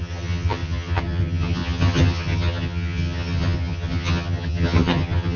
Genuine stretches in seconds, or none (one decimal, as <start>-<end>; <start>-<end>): none